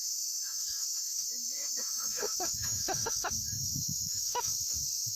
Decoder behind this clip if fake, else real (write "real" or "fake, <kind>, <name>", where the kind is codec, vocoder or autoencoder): fake, autoencoder, DAC-VAE